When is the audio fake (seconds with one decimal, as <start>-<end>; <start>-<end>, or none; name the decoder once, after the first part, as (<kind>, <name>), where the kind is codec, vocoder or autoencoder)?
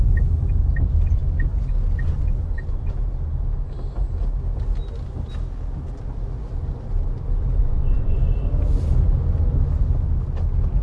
7.6-8.2 (vocoder, Vocos)